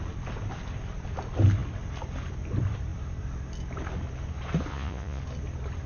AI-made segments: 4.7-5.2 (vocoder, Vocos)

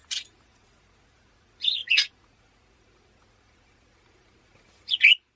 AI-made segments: 0.0-5.4 (vocoder, Vocos)

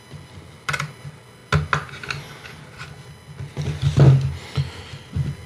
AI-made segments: none

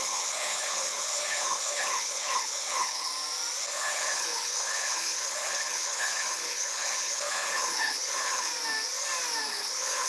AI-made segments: 0.0-3.1 (codec, HILCodec); 3.6-8.5; 9.5-10.1

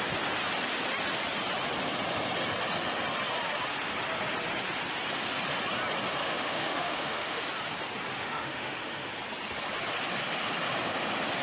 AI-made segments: 6.2-7.4 (autoencoder, DAC-VAE); 8.1-9.1

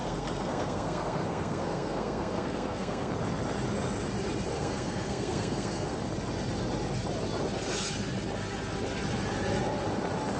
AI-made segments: 0.0-3.1 (codec, SNAC); 4.5-6.0

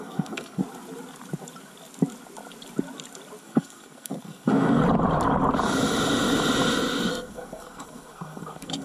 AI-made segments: 0.0-0.6 (codec, SNAC); 3.4-4.8; 7.1-8.8